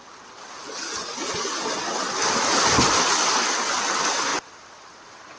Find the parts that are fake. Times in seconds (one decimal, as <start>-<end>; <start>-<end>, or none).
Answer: none